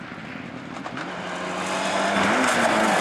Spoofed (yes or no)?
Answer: no